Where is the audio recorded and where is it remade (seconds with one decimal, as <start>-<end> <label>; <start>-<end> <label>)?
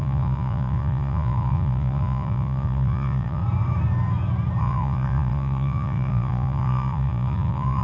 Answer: 0.0-3.4 remade; 3.4-4.6 recorded; 4.6-7.8 remade